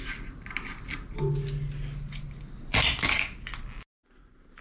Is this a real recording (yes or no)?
yes